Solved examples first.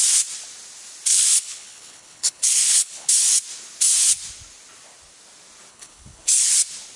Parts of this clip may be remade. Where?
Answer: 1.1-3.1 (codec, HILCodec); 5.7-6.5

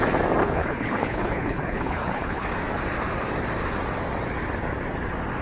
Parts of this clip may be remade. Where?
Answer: 0.4-2.5 (codec, HILCodec)

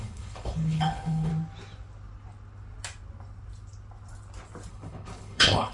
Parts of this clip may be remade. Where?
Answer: 0.0-1.3 (codec, HILCodec); 4.7-5.7

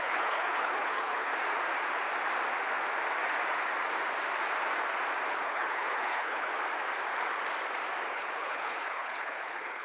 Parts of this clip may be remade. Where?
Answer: 0.0-1.3 (codec, HILCodec); 5.3-6.5; 8.1-9.8

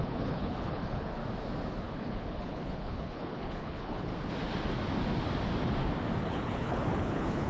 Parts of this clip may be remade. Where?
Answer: 0.0-1.2 (codec, HILCodec); 1.7-4.1; 6.2-7.5